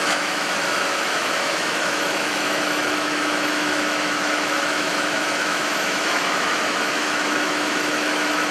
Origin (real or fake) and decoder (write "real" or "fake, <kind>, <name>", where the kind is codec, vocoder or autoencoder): fake, autoencoder, DAC-VAE